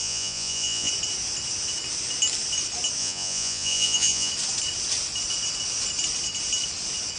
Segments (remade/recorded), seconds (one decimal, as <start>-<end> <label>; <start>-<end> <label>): 0.0-0.9 remade; 0.9-3.0 recorded; 3.0-4.3 remade; 4.3-7.2 recorded